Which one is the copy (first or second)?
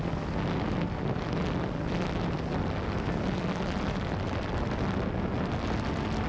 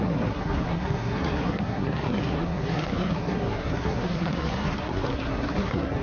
second